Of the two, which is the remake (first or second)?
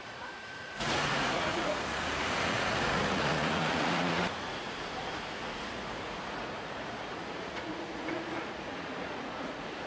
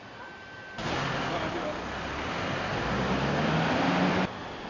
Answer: first